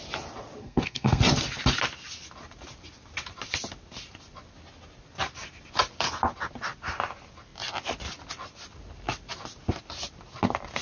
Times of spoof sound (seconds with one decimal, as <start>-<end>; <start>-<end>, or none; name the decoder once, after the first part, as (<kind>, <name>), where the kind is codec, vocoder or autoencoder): 0.6-1.2 (codec, SNAC)